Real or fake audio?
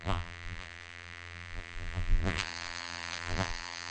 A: fake